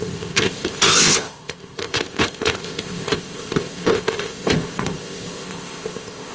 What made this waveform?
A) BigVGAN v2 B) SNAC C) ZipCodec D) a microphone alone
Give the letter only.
C